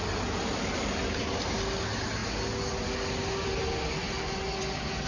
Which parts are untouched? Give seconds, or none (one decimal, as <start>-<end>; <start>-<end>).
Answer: 0.0-5.1